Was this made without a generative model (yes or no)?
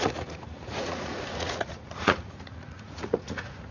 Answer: no